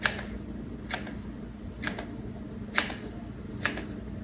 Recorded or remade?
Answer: recorded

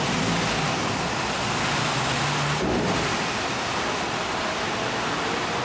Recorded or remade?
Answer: recorded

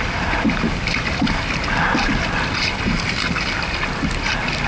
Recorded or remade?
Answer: recorded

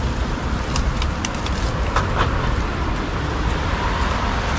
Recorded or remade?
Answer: remade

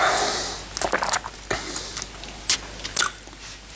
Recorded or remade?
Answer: recorded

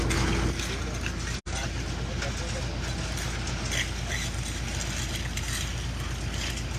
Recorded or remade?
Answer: recorded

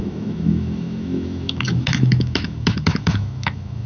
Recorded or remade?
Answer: remade